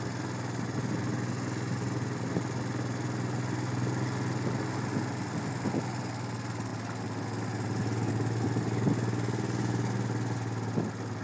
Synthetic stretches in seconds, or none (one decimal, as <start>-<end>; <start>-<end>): none